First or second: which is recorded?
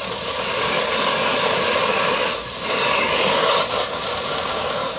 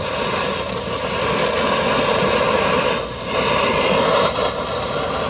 second